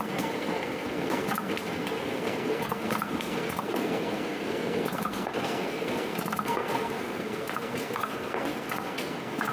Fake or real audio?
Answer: fake